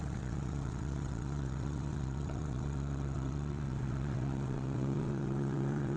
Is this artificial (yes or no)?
yes